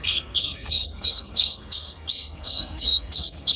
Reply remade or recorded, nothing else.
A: remade